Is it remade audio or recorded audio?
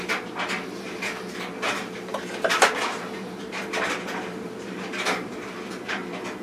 recorded